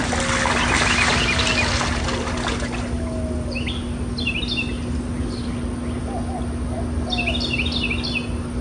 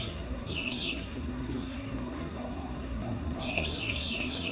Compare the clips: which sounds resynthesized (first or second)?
second